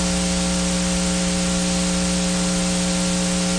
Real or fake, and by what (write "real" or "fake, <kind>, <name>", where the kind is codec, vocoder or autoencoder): real